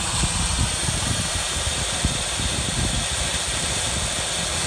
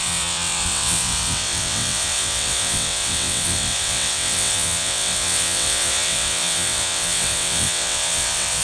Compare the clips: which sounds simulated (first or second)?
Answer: second